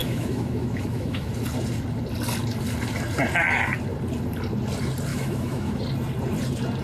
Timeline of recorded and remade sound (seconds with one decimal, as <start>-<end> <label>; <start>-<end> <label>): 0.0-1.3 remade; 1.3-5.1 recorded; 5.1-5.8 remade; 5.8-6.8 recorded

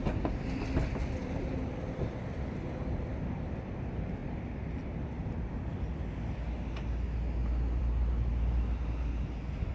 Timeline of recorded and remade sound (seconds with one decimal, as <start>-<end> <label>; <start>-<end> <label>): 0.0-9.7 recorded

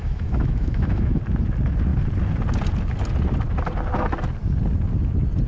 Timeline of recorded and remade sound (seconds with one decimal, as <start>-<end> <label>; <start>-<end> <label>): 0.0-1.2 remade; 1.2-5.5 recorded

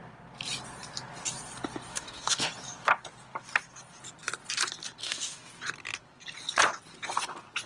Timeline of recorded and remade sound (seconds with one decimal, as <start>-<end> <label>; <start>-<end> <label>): 0.0-1.9 recorded; 1.9-2.5 remade; 2.5-5.0 recorded; 5.0-5.5 remade; 5.5-7.7 recorded

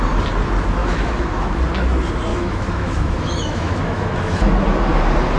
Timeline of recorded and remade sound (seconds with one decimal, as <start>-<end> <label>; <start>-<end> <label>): 0.0-0.8 recorded; 0.8-1.6 remade; 1.6-2.3 recorded; 2.3-4.5 remade; 4.5-5.4 recorded